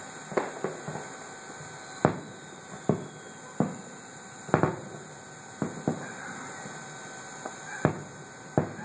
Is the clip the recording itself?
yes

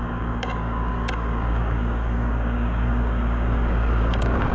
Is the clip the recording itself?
no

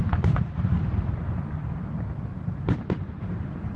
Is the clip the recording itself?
yes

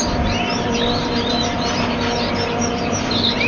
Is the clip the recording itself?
no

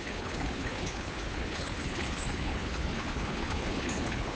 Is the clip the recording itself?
no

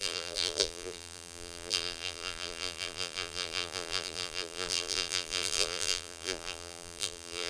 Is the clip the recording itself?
no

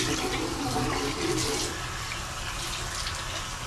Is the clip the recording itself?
yes